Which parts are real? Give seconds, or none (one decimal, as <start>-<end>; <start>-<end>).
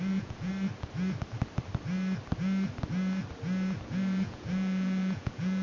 0.5-3.9